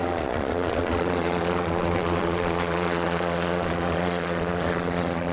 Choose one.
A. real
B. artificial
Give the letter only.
B